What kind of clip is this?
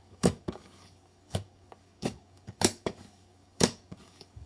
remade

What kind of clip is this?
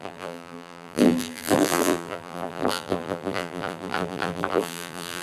remade